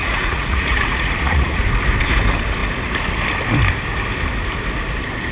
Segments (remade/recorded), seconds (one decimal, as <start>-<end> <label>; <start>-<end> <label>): 0.0-1.6 remade; 1.6-5.3 recorded